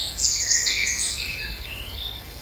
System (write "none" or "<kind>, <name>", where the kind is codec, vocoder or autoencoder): codec, SNAC